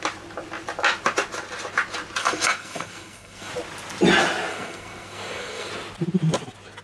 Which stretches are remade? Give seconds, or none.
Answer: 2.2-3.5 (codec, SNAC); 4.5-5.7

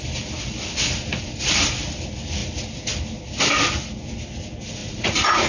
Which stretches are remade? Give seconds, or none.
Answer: 4.8-5.5 (vocoder, Vocos)

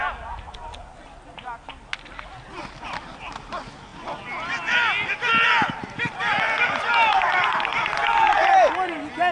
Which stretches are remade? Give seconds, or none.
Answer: none

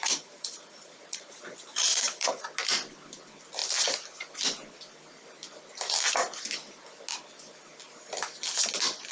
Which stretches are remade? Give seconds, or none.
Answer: 0.0-2.3 (vocoder, Vocos)

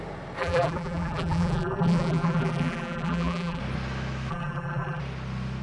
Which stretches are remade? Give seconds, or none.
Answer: 0.4-3.6 (vocoder, BigVGAN v2); 4.3-5.0

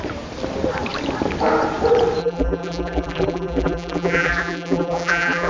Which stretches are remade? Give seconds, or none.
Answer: 2.2-5.5 (vocoder, BigVGAN v2)

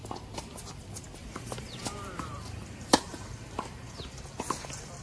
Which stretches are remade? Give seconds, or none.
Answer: 1.2-4.2 (vocoder, BigVGAN v2)